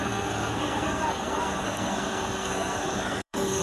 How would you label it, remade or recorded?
remade